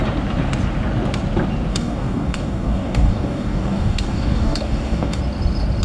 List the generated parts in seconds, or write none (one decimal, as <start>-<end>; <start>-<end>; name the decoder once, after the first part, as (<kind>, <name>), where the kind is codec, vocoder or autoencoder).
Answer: 1.7-5.2 (codec, DAC)